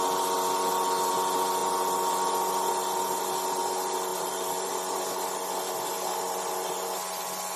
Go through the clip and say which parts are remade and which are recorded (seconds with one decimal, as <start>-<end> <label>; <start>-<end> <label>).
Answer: 0.0-4.1 recorded; 4.1-4.7 remade; 4.7-7.6 recorded